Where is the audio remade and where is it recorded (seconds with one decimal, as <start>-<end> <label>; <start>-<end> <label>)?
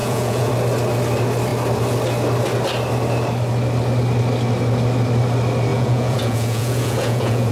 0.0-0.5 remade; 0.5-5.7 recorded; 5.7-7.5 remade